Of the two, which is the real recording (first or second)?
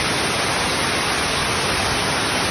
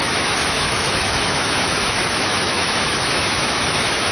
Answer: first